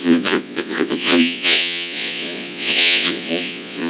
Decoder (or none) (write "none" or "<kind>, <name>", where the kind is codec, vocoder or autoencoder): vocoder, Vocos